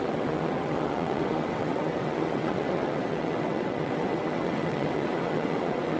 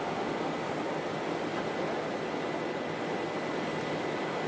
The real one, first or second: second